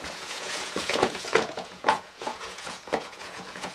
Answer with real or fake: fake